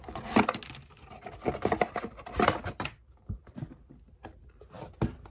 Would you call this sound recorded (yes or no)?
yes